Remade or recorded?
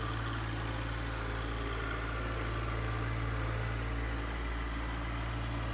recorded